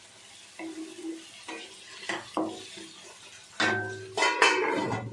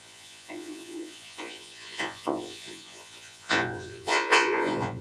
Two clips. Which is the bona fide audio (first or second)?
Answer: first